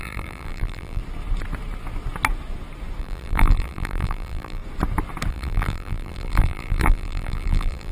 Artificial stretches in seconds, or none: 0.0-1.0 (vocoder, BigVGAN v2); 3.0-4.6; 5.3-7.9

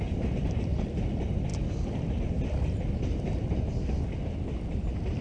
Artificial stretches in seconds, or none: none

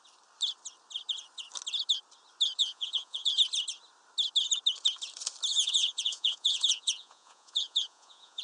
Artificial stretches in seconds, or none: 2.6-3.3 (vocoder, Vocos); 5.5-8.4

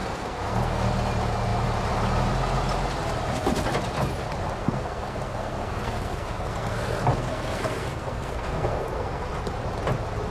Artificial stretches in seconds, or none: 0.0-0.8 (codec, SNAC); 4.6-9.3